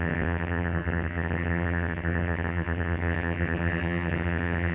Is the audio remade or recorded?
remade